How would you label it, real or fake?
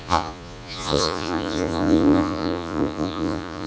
fake